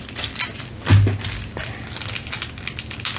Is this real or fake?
real